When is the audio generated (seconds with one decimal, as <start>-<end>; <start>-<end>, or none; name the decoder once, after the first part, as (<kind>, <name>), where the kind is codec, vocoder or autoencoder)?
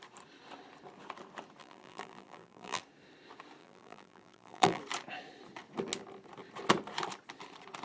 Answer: 1.6-2.8 (vocoder, BigVGAN v2); 3.6-4.8